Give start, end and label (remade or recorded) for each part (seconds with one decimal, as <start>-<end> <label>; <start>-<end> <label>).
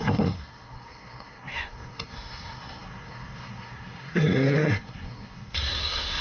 0.0-6.2 remade